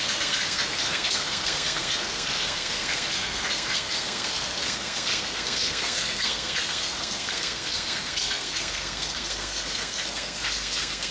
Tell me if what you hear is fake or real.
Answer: fake